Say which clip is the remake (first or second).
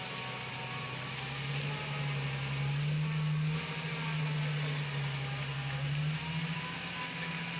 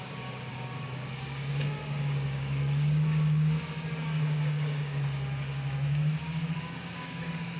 second